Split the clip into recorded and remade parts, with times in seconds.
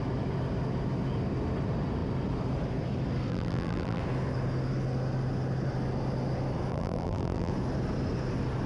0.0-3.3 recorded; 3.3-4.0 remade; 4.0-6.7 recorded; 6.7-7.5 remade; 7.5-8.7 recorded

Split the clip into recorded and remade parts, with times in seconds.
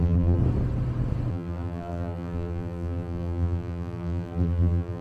0.0-0.4 remade; 0.4-1.3 recorded; 1.3-5.0 remade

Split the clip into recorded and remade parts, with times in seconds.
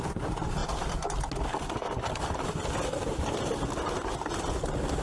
0.0-5.0 recorded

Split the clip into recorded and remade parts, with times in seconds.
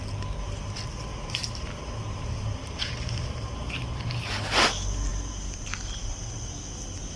0.0-1.1 recorded; 1.1-4.4 remade; 4.4-5.1 recorded; 5.1-5.7 remade; 5.7-7.2 recorded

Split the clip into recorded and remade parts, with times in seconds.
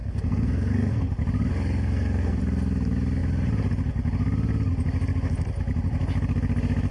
0.0-1.1 remade; 1.1-1.5 recorded; 1.5-2.4 remade; 2.4-6.9 recorded